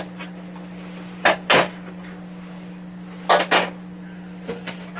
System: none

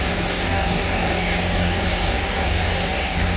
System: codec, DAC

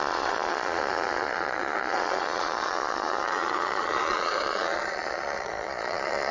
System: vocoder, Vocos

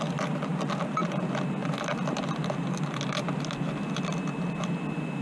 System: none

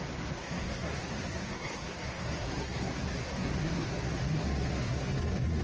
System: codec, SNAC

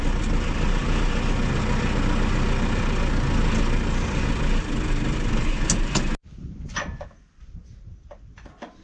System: none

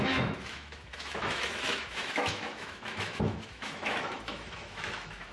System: autoencoder, DAC-VAE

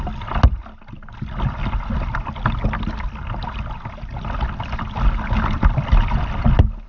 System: none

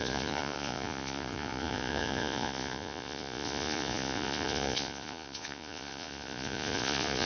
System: vocoder, Vocos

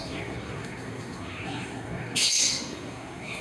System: codec, SNAC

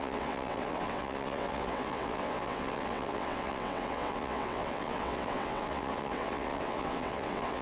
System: vocoder, WaveNeXt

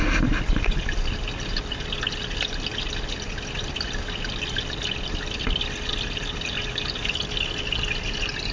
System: none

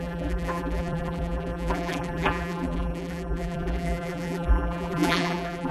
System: vocoder, BigVGAN v2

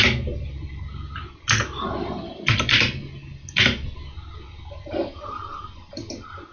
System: none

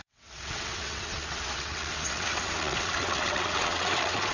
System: vocoder, WaveNeXt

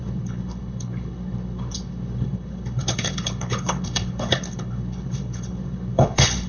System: codec, HILCodec